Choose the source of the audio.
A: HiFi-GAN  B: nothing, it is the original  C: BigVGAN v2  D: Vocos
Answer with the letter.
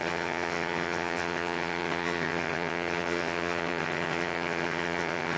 A